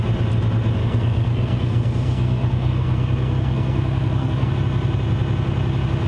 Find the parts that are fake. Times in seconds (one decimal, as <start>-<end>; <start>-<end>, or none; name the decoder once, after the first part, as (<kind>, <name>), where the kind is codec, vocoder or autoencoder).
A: 0.8-4.5 (codec, SNAC)